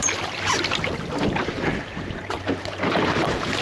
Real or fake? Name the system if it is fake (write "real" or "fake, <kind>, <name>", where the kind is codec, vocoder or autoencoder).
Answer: real